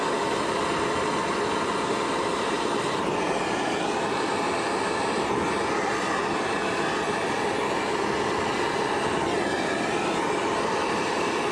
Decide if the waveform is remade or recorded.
recorded